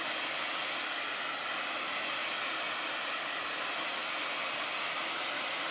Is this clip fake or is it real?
real